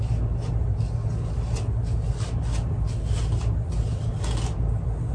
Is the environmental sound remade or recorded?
recorded